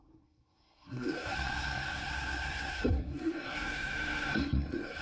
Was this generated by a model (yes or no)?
yes